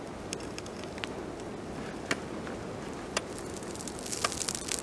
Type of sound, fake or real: real